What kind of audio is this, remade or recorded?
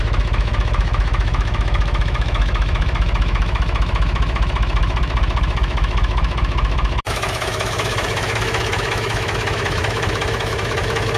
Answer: remade